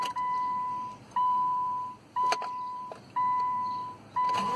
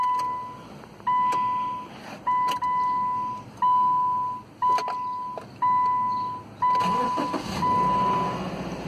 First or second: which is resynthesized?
first